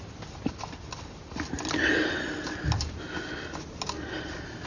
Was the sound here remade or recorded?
recorded